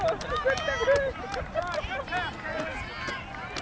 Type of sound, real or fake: real